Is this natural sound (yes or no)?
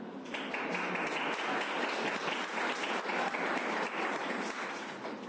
yes